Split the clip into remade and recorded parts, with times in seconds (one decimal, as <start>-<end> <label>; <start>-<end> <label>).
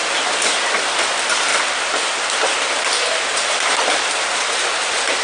0.0-1.5 recorded; 1.5-4.4 remade; 4.4-5.2 recorded